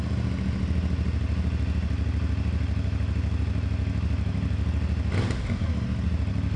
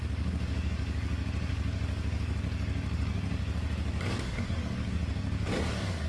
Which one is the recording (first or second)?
first